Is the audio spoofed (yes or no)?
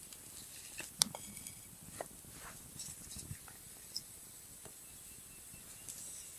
no